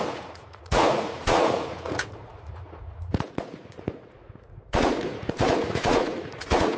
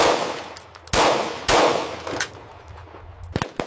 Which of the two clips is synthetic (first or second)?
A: first